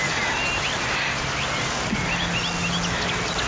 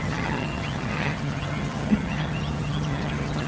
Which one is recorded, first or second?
first